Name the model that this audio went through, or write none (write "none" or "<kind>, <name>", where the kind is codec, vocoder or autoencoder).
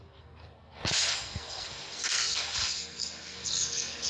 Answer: codec, SNAC